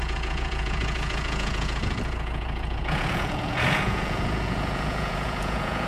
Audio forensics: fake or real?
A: fake